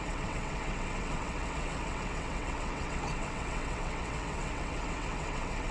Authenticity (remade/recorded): remade